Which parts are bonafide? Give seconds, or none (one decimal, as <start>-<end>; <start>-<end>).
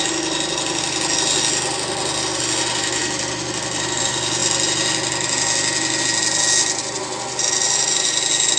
0.0-8.6